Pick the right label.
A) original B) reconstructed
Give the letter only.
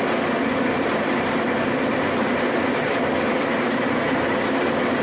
A